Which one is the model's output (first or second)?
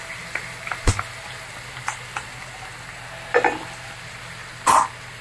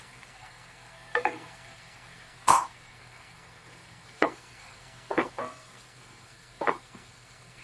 second